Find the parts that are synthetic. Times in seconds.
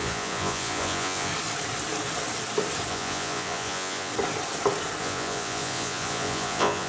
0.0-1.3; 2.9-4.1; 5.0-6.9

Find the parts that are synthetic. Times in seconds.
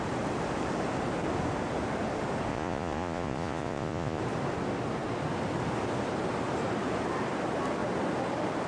2.5-4.2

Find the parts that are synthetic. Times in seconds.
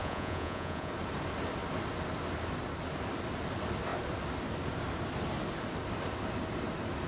0.0-0.9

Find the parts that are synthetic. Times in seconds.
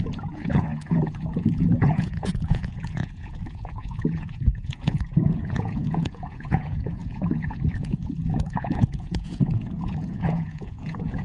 0.0-11.2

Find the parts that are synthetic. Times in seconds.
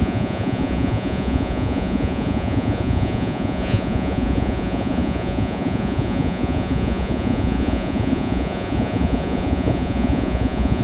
0.0-10.8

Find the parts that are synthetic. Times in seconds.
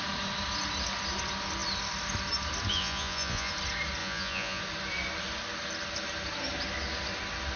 2.7-3.5; 4.0-4.6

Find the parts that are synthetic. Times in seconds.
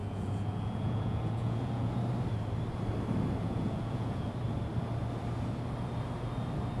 0.0-1.9; 3.4-4.3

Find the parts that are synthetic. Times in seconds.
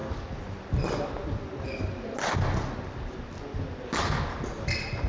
none